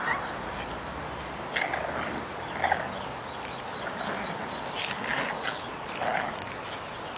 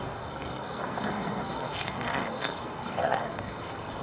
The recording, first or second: first